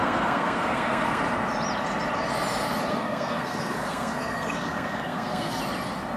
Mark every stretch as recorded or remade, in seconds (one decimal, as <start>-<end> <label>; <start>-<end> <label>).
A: 0.0-1.2 remade; 1.2-2.9 recorded; 2.9-5.6 remade; 5.6-6.2 recorded